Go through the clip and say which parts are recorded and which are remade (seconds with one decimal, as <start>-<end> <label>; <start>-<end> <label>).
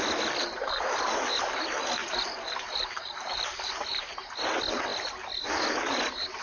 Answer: 0.0-0.4 recorded; 0.4-1.2 remade; 1.2-2.0 recorded; 2.0-4.1 remade; 4.1-6.4 recorded